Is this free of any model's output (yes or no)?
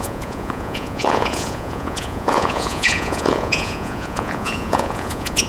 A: no